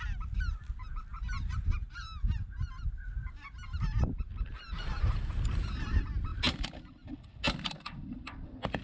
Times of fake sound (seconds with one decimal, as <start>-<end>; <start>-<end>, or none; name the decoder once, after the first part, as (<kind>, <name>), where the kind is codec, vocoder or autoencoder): none